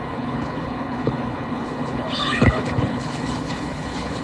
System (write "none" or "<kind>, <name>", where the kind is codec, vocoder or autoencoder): codec, HILCodec